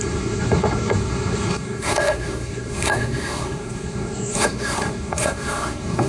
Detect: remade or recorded remade